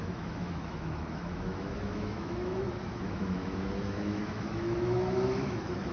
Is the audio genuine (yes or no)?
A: no